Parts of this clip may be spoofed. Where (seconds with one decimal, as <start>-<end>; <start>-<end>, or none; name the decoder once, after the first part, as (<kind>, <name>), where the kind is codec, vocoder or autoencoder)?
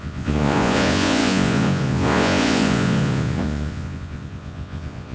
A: 0.0-5.1 (vocoder, Vocos)